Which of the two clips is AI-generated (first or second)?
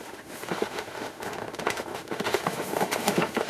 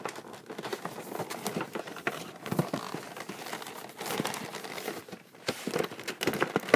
first